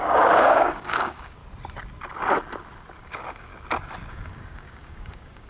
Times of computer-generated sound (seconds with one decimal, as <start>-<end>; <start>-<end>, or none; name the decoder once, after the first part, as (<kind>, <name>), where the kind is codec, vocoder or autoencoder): 0.0-1.4 (codec, DAC); 3.0-3.5; 4.1-5.5